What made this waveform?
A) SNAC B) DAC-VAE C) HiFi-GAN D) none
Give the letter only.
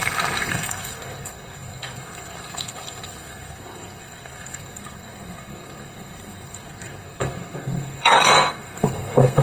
A